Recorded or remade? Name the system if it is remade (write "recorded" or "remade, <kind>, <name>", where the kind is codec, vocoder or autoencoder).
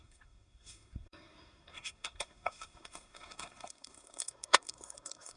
remade, codec, SNAC